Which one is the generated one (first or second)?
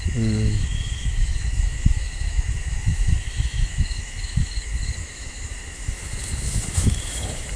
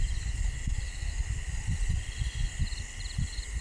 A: first